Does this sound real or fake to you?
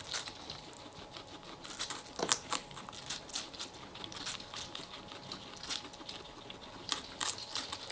real